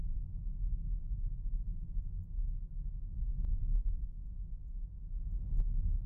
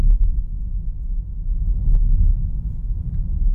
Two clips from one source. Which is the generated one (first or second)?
second